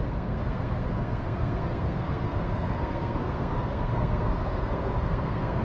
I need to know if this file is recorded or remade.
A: remade